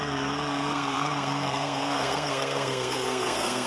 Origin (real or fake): fake